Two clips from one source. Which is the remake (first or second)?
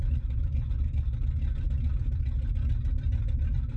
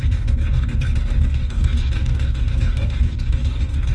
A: second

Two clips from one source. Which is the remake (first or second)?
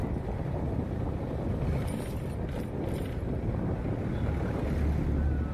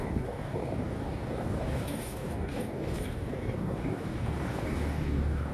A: second